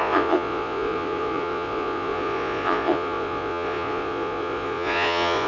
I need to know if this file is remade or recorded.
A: remade